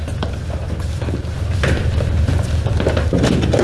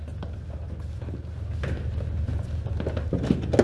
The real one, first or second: second